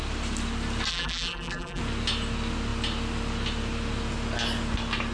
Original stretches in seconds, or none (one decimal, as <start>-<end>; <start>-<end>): 0.0-0.9; 1.8-5.1